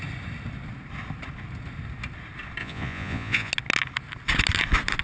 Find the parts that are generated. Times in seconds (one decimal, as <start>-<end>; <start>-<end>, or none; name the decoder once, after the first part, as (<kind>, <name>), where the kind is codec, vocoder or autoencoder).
2.6-3.5 (vocoder, Vocos)